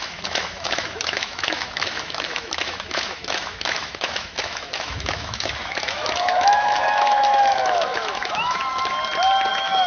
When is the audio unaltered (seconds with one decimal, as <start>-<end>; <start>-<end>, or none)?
8.6-9.5